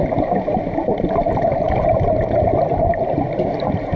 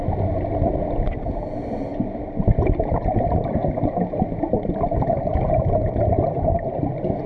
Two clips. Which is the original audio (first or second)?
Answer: second